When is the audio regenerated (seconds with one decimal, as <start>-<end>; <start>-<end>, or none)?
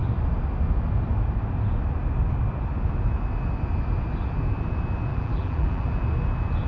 5.1-5.9